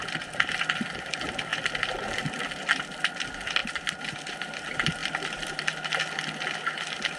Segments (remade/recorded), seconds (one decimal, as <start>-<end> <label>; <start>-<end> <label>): 0.0-5.0 recorded; 5.0-6.0 remade; 6.0-7.2 recorded